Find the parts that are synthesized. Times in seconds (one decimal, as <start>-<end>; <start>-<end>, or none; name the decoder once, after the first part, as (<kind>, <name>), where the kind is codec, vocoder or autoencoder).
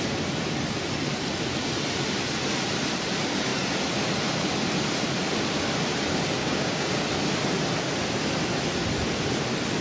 6.4-7.0 (codec, DAC)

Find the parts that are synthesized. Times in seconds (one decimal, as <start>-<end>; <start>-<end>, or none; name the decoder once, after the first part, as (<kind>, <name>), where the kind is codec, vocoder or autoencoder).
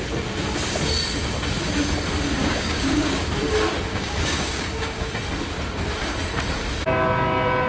2.4-3.2 (codec, DAC); 3.9-5.1